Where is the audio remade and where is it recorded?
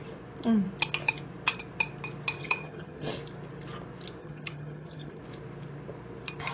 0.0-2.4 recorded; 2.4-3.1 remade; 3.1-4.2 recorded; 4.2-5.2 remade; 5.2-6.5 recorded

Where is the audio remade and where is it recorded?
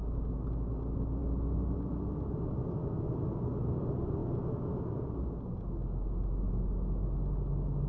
0.0-7.9 recorded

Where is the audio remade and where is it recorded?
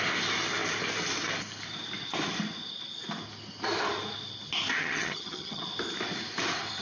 0.0-4.8 recorded; 4.8-5.6 remade; 5.6-6.8 recorded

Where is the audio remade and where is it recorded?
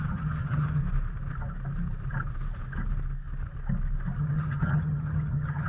0.0-0.8 remade; 0.8-4.2 recorded; 4.2-5.7 remade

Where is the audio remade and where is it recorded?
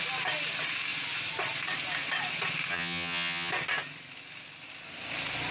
0.0-2.7 recorded; 2.7-3.5 remade; 3.5-5.5 recorded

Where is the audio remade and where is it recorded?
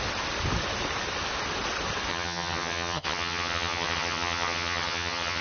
0.0-2.1 recorded; 2.1-5.4 remade